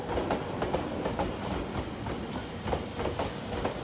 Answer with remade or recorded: recorded